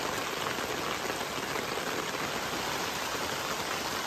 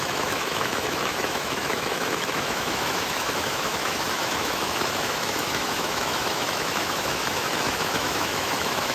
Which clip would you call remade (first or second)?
second